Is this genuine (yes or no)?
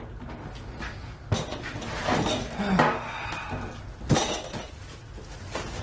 yes